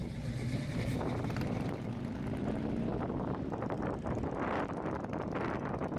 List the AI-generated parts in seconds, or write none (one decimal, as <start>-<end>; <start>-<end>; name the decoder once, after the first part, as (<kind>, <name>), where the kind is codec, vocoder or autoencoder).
none

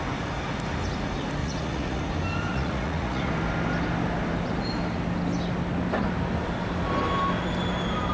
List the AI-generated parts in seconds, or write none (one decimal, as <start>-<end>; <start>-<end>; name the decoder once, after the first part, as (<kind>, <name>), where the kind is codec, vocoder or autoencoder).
1.4-2.0 (vocoder, Vocos); 2.5-3.3

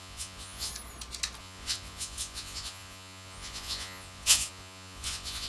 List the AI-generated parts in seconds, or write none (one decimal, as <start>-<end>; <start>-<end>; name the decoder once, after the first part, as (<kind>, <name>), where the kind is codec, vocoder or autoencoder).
0.0-0.7 (vocoder, Vocos); 1.4-5.5

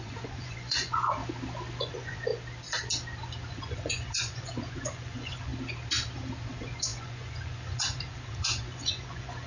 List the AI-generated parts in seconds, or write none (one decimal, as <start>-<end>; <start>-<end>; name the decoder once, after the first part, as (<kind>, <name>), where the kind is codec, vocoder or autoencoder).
0.0-1.2 (vocoder, Vocos); 1.8-2.3; 3.5-5.5; 6.5-9.5

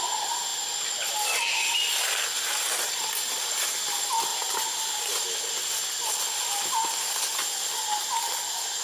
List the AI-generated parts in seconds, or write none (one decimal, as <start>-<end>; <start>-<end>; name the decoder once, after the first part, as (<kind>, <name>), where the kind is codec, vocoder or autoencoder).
none

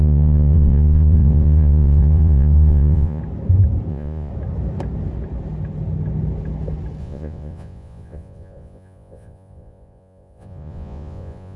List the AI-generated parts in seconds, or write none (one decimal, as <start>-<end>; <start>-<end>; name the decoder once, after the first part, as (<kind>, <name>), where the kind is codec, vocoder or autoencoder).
0.0-3.2 (vocoder, Vocos); 3.9-4.3; 7.0-11.6

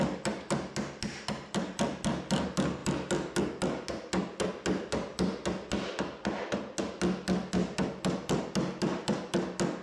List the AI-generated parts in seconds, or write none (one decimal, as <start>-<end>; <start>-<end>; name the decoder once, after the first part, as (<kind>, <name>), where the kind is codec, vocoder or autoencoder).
none